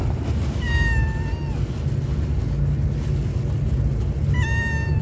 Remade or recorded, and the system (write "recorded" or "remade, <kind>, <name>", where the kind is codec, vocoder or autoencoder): recorded